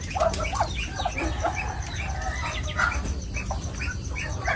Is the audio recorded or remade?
recorded